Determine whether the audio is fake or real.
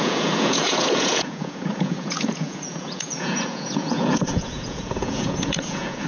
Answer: fake